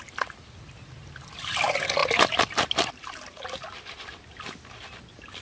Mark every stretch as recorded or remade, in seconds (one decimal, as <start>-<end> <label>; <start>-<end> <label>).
0.0-5.4 recorded